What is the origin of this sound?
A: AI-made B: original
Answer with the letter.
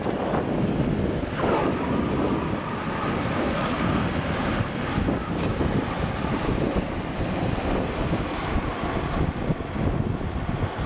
B